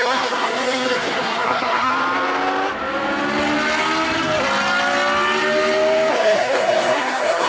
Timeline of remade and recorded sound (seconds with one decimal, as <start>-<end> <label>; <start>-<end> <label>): 0.0-1.9 remade; 1.9-6.1 recorded; 6.1-7.5 remade